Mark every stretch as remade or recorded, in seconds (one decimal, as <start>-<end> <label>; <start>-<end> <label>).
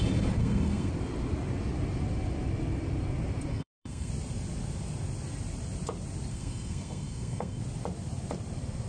0.0-0.4 recorded; 0.4-0.9 remade; 0.9-3.5 recorded; 3.5-4.1 remade; 4.1-6.3 recorded; 6.3-7.6 remade; 7.6-8.9 recorded